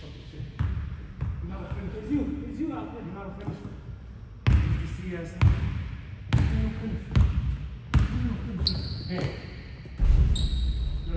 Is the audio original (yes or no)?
yes